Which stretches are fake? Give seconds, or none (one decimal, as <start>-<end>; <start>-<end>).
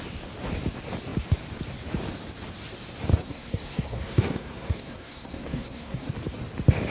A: 3.1-6.1